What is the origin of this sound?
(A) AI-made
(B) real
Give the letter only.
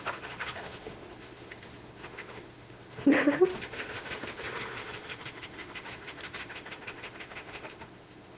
A